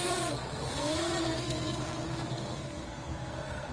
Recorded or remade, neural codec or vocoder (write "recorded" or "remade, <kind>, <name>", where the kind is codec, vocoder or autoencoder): remade, codec, SNAC